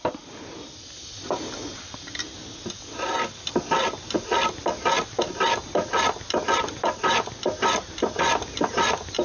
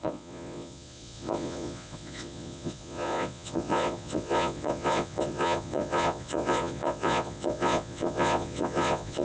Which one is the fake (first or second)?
second